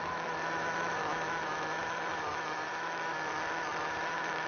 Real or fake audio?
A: fake